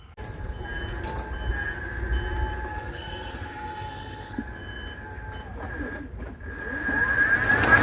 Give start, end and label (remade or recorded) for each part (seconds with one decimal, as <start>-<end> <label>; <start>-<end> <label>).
0.0-2.7 recorded; 2.7-4.4 remade; 4.4-7.8 recorded